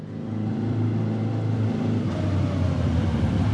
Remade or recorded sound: remade